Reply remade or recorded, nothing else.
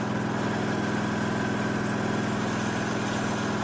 recorded